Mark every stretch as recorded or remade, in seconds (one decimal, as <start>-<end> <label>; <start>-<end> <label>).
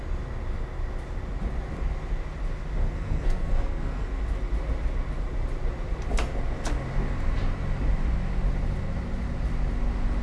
0.0-2.8 recorded; 2.8-4.2 remade; 4.2-10.2 recorded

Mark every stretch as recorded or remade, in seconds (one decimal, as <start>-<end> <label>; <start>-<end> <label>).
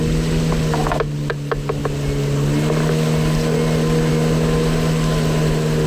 0.0-5.9 recorded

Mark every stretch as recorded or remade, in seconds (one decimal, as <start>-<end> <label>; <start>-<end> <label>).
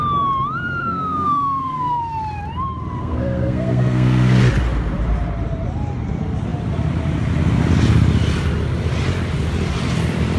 0.0-0.8 recorded; 0.8-2.0 remade; 2.0-3.0 recorded; 3.0-4.4 remade; 4.4-10.4 recorded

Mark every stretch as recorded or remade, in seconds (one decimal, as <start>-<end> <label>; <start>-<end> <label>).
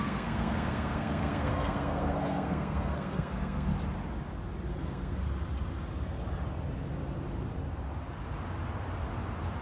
0.0-3.7 remade; 3.7-4.7 recorded; 4.7-5.2 remade; 5.2-9.6 recorded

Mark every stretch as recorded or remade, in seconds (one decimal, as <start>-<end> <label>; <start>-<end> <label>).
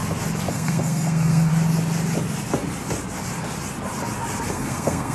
0.0-0.5 recorded; 0.5-1.5 remade; 1.5-4.5 recorded; 4.5-5.1 remade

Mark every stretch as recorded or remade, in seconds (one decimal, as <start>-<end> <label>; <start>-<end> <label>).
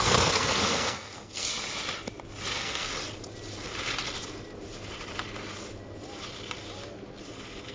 0.0-1.5 remade; 1.5-2.5 recorded; 2.5-2.9 remade; 2.9-7.7 recorded